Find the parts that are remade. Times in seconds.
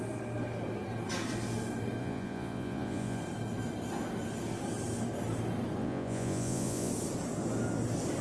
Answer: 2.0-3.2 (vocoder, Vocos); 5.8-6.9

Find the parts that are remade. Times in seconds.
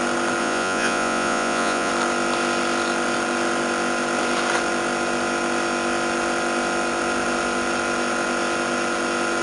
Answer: 0.4-1.9 (vocoder, Vocos)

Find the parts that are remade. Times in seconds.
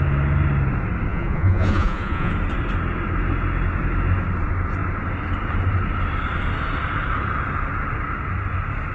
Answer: 1.1-2.3 (vocoder, Vocos)